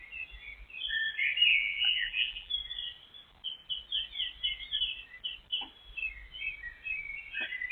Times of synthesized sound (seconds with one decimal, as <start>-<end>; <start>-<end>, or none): 1.5-2.5